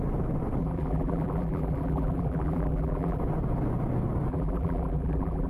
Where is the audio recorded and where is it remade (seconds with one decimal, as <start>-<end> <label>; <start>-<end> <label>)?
0.0-0.6 recorded; 0.6-3.2 remade; 3.2-4.3 recorded; 4.3-5.5 remade